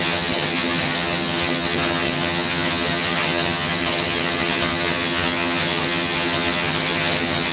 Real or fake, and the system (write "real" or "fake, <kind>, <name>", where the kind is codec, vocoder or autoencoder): fake, vocoder, HiFi-GAN